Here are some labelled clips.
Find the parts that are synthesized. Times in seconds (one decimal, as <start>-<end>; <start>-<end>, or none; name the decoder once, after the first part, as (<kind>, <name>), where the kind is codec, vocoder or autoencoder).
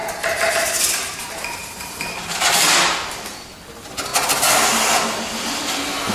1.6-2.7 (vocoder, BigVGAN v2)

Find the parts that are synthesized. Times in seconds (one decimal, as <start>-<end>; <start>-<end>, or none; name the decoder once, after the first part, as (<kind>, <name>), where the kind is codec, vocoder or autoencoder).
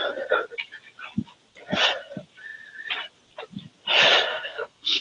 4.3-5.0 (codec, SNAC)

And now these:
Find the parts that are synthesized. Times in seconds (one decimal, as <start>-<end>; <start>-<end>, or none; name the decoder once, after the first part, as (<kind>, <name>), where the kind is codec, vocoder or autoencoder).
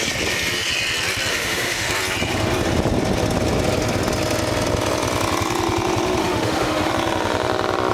1.3-1.9 (autoencoder, DAC-VAE); 6.2-6.9